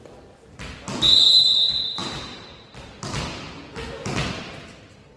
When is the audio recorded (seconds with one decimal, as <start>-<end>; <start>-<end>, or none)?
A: 0.0-5.2